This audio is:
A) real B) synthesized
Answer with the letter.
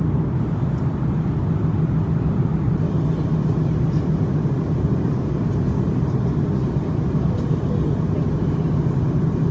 A